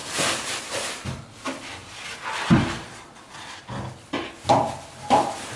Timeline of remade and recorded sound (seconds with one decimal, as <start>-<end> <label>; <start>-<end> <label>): 0.0-1.8 recorded; 1.8-3.6 remade; 3.6-5.6 recorded